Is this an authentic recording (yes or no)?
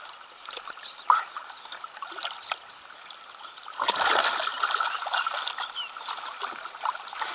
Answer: yes